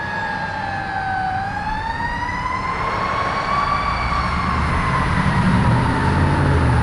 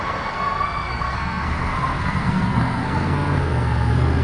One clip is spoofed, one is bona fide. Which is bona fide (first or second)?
first